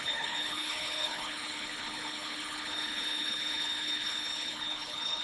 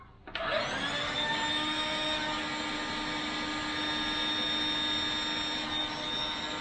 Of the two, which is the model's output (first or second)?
first